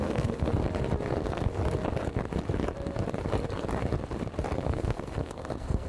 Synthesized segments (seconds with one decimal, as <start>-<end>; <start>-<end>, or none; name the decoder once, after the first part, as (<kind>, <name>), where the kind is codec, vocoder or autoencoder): 0.0-0.5 (codec, SNAC); 1.2-1.6; 4.6-5.9